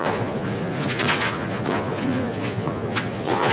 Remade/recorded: remade